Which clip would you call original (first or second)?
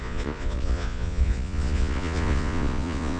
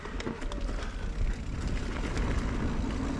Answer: second